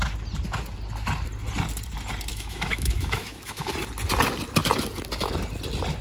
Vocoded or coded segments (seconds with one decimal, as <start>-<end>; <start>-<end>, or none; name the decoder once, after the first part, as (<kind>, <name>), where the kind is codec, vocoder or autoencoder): 2.3-3.7 (autoencoder, DAC-VAE)